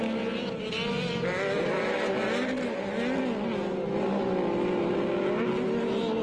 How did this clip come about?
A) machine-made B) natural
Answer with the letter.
B